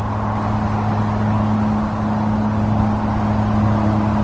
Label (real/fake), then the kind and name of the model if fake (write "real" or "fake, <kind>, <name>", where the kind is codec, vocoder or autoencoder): real